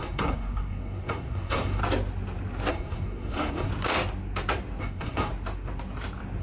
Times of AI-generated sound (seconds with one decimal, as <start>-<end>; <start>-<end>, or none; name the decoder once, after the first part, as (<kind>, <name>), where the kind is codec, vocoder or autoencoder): 0.0-1.8 (codec, SNAC); 2.7-3.7; 4.8-5.3